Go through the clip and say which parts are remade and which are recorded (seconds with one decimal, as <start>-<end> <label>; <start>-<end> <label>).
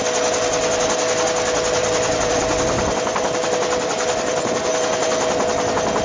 0.0-1.8 recorded; 1.8-4.7 remade; 4.7-6.0 recorded